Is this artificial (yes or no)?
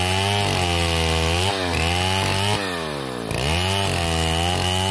no